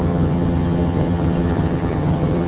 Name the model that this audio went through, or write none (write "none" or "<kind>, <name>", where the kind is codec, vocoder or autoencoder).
vocoder, HiFi-GAN